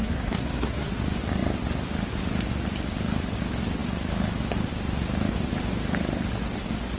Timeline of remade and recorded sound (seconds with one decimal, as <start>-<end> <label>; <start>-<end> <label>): 0.0-0.9 remade; 0.9-7.0 recorded